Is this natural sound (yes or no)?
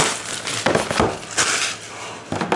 yes